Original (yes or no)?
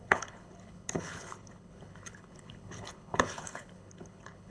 no